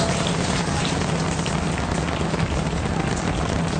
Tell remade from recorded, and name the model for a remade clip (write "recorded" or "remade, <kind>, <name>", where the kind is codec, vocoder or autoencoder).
recorded